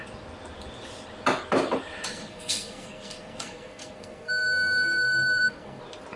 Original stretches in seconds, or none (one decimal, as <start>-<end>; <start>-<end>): 0.0-2.1; 5.8-6.2